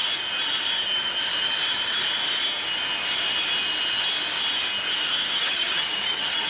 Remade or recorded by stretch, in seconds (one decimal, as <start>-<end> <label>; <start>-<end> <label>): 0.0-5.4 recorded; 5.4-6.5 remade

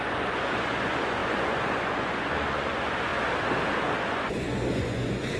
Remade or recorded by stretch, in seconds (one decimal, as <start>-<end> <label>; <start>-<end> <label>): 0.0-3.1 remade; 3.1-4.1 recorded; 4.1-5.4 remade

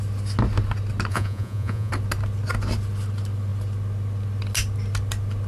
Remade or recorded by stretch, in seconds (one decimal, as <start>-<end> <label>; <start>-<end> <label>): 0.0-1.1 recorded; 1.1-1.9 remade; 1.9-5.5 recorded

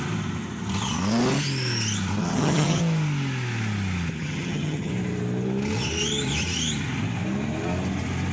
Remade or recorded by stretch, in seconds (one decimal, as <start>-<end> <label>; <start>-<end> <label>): 0.0-2.2 recorded; 2.2-2.8 remade; 2.8-4.2 recorded; 4.2-4.9 remade; 4.9-8.3 recorded

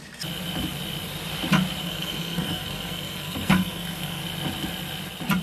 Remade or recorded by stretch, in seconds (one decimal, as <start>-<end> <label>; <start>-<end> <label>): 0.0-1.8 recorded; 1.8-4.2 remade; 4.2-5.4 recorded

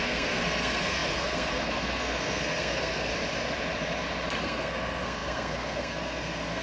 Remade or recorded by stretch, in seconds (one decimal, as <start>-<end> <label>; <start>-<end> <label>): 0.0-3.1 remade; 3.1-4.4 recorded; 4.4-6.6 remade